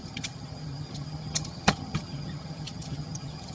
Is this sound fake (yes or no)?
yes